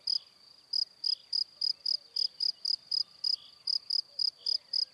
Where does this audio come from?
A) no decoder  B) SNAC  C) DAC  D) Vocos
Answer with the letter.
A